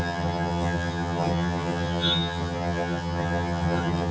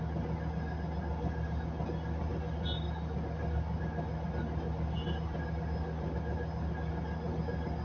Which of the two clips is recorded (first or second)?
second